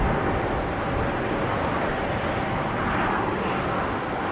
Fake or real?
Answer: real